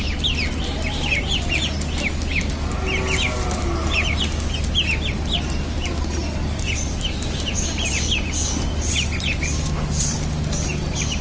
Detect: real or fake real